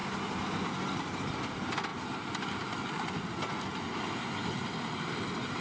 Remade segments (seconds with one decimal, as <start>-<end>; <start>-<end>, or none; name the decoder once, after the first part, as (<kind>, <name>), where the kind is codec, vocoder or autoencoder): none